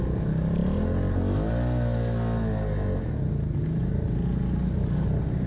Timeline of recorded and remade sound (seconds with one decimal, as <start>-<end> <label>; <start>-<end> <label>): 0.0-5.5 recorded